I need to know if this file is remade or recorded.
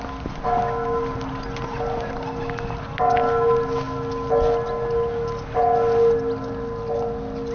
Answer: recorded